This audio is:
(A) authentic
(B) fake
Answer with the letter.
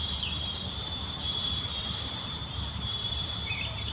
B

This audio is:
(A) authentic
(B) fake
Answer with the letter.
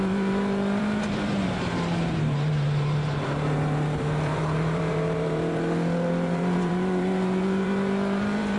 B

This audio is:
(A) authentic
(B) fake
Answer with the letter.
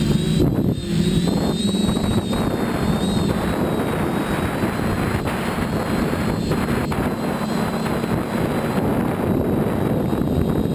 B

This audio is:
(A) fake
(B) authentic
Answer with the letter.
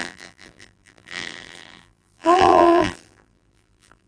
A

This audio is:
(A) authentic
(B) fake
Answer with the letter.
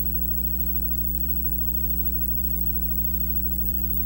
A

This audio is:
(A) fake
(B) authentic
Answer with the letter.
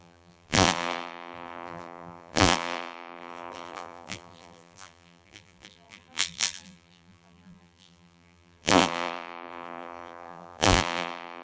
A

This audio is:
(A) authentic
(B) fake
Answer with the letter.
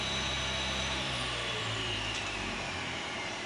B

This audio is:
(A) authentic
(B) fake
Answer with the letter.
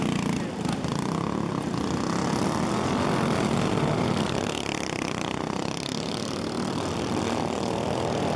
B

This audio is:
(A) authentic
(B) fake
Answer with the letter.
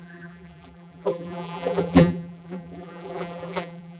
B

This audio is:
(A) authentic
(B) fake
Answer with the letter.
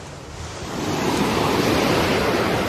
A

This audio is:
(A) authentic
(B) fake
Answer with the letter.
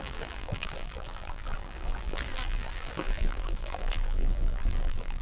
B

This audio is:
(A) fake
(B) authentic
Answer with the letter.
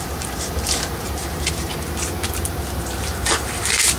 A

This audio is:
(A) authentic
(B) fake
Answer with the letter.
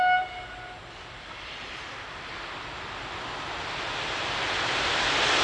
A